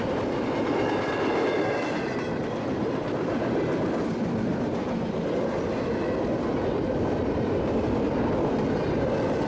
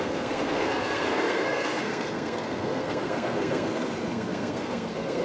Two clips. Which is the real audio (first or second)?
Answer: first